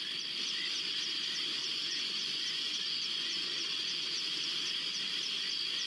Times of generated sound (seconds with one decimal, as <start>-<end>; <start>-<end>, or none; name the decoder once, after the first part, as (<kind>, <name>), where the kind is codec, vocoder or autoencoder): 1.6-4.6 (vocoder, Vocos)